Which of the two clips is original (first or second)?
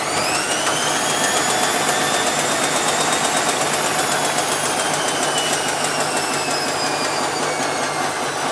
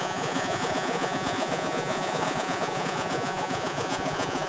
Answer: first